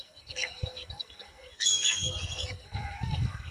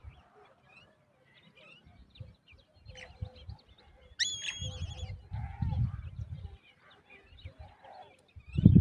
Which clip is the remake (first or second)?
first